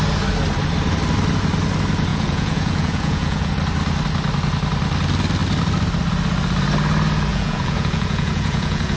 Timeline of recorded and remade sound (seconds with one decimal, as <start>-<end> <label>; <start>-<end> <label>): 0.0-2.1 recorded; 2.1-3.5 remade; 3.5-7.3 recorded; 7.3-9.0 remade